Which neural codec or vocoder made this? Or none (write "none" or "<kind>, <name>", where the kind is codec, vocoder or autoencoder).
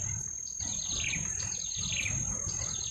none